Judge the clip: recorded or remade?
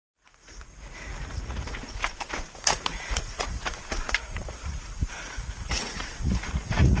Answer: remade